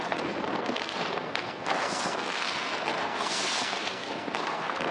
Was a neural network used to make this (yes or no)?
yes